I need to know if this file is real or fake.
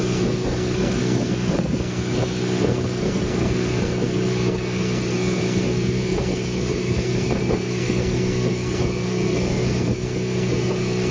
fake